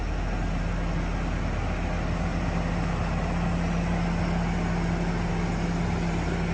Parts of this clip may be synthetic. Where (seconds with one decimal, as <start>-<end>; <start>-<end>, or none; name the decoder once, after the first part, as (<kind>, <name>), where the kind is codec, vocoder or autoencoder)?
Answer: none